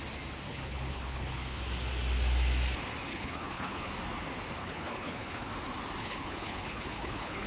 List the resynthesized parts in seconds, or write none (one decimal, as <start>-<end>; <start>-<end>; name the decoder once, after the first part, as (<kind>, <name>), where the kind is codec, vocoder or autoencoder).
0.5-1.6 (codec, HILCodec); 3.1-3.9; 4.6-5.5; 6.0-7.5